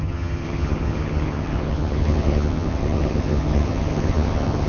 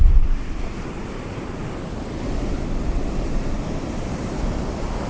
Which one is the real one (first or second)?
second